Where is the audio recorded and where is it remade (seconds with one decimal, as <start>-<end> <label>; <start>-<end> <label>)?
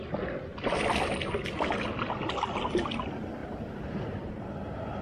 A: 0.0-3.4 recorded; 3.4-4.3 remade; 4.3-5.0 recorded